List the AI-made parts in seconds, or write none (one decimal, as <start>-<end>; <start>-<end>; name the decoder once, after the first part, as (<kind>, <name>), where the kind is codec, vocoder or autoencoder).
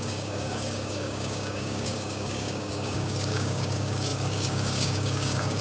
0.0-5.6 (codec, DAC)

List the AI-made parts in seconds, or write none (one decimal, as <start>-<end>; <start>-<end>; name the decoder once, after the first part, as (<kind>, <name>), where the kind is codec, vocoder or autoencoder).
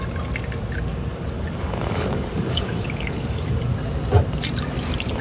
0.9-3.7 (codec, DAC)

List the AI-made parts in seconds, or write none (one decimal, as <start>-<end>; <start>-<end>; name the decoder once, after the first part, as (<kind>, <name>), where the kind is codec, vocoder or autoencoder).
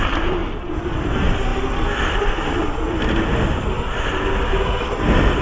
none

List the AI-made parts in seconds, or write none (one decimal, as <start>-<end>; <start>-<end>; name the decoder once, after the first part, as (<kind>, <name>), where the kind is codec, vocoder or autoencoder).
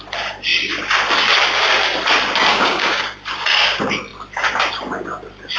2.5-3.0 (codec, DAC)